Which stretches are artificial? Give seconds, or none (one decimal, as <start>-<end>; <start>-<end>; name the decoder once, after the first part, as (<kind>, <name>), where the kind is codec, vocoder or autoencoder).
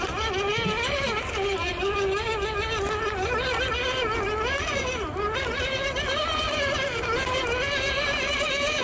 none